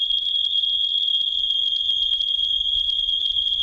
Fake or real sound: real